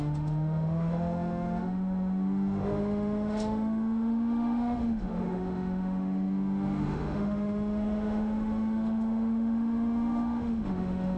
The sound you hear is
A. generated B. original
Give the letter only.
A